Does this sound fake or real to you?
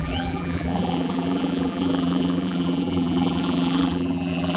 fake